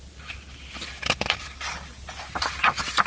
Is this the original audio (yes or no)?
yes